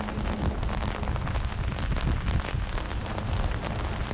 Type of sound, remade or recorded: recorded